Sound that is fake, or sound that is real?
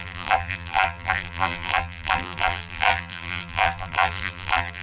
fake